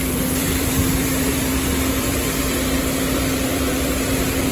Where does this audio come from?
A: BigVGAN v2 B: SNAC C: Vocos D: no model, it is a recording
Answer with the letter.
A